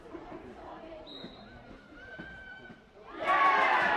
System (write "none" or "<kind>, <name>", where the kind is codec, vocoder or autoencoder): vocoder, BigVGAN v2